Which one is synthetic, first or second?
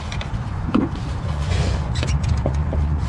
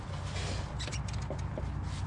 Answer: first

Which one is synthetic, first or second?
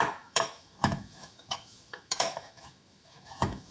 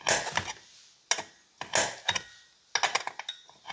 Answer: first